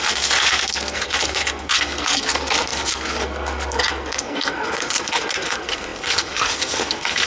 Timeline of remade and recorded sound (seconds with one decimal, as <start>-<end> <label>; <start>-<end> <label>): 0.0-7.3 remade